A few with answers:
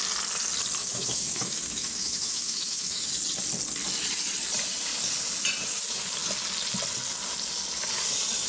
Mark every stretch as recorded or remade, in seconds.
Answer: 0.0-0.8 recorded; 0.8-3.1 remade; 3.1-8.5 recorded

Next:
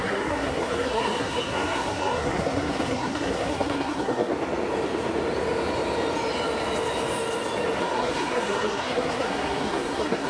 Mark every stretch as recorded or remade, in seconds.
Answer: 0.0-4.3 remade; 4.3-7.8 recorded; 7.8-10.3 remade

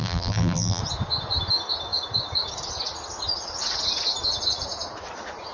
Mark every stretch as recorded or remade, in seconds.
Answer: 0.0-0.8 remade; 0.8-5.5 recorded

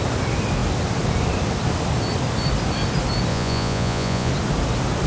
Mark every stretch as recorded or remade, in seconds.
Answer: 0.0-3.3 recorded; 3.3-4.3 remade; 4.3-5.1 recorded

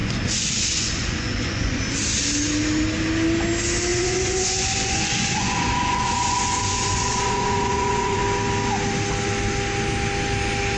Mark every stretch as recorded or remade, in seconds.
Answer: 0.0-1.8 remade; 1.8-3.9 recorded; 3.9-8.2 remade; 8.2-10.8 recorded

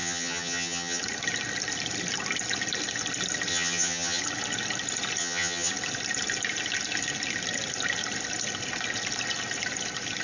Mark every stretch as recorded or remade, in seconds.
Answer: 0.0-1.0 remade; 1.0-3.5 recorded; 3.5-4.2 remade; 4.2-5.2 recorded; 5.2-5.7 remade; 5.7-10.2 recorded

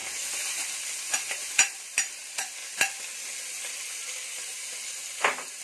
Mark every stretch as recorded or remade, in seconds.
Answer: 0.0-0.6 remade; 0.6-1.4 recorded; 1.4-2.2 remade; 2.2-5.6 recorded